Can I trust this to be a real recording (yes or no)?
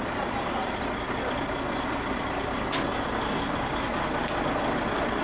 yes